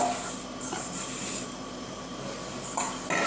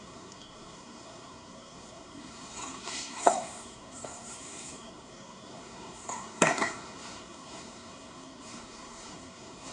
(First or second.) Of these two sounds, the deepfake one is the second